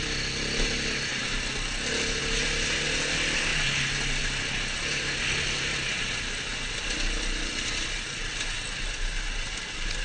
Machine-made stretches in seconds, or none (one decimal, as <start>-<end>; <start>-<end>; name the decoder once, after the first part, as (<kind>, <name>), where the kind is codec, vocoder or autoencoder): none